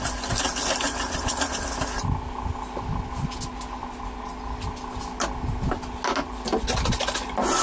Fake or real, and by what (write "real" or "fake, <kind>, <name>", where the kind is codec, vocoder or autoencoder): real